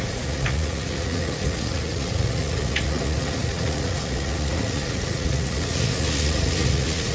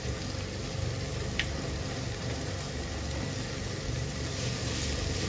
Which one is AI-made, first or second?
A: first